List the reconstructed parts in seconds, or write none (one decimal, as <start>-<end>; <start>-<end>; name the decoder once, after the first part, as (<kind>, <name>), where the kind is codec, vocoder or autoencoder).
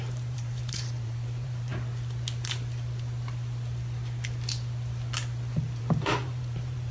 0.0-1.7 (vocoder, BigVGAN v2); 5.8-6.9